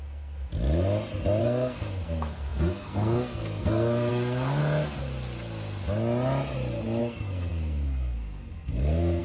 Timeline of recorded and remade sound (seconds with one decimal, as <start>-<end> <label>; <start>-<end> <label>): 0.0-0.5 remade; 0.5-1.4 recorded; 1.4-4.6 remade; 4.6-7.0 recorded; 7.0-9.2 remade